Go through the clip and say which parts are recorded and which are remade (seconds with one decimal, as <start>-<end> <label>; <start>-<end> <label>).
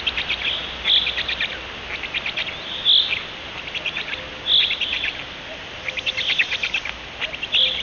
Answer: 0.0-7.8 recorded